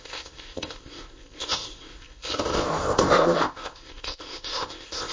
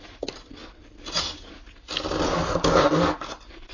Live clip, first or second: second